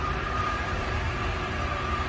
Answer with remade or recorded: recorded